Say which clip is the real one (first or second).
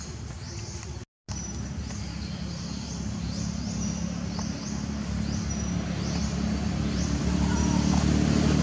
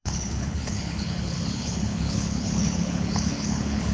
first